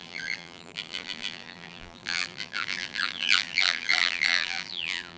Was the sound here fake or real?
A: fake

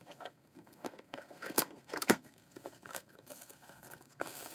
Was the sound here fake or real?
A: fake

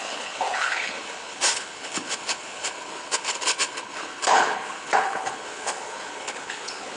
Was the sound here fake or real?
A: fake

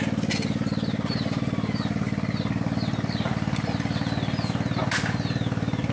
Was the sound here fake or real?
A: real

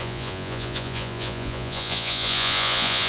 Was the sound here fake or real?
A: fake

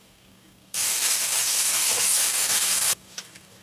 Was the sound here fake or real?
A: fake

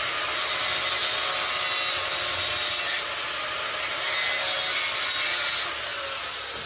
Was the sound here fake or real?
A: real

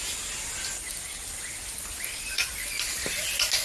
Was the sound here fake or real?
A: real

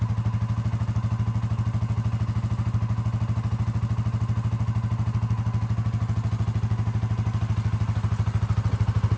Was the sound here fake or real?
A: real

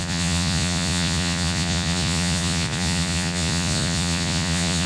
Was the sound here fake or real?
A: fake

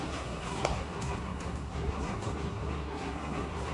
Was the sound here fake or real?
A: fake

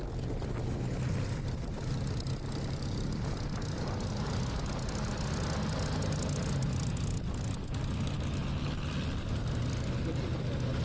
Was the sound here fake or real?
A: real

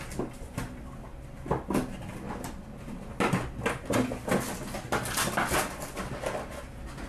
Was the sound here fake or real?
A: real